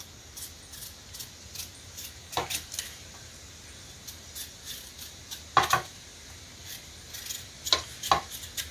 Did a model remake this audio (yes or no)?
no